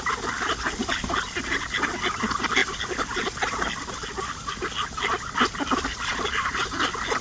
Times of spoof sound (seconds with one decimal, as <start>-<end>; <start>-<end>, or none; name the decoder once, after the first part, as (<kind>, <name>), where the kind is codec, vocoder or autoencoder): none